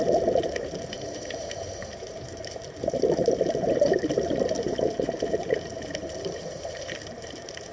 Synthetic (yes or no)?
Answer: yes